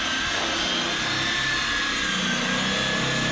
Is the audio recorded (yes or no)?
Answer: yes